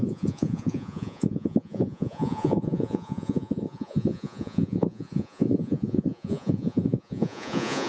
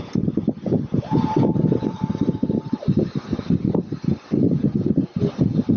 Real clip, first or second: second